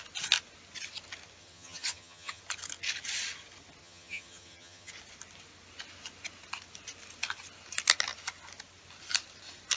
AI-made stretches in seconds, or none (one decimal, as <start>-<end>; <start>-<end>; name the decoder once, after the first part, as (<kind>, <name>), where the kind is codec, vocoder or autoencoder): 1.4-2.4 (vocoder, HiFi-GAN); 3.8-4.9